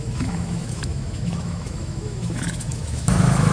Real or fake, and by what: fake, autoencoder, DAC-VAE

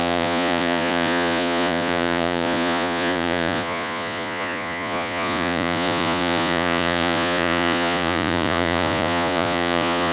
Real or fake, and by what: fake, vocoder, Vocos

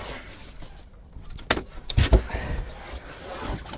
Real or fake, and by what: real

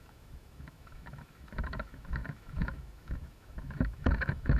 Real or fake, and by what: fake, autoencoder, DAC-VAE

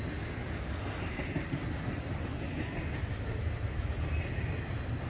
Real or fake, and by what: real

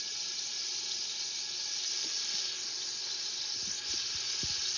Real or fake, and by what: real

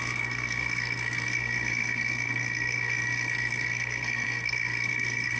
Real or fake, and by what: fake, codec, SNAC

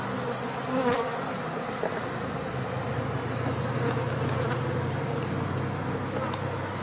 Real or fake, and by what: real